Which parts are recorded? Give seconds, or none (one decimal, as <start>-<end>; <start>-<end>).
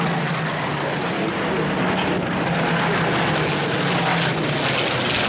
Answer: 0.0-5.3